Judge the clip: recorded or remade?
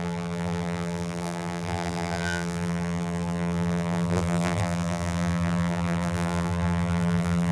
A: remade